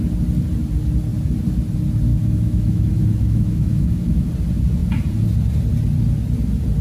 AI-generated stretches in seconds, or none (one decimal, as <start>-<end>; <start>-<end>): 2.1-4.3

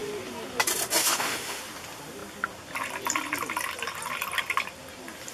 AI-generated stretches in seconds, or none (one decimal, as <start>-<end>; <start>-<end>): 1.0-1.6